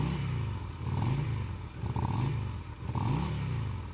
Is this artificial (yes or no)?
no